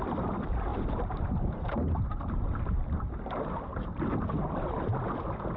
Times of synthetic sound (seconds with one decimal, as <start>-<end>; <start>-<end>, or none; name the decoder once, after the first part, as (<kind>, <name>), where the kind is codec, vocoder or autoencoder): 0.7-4.1 (vocoder, BigVGAN v2)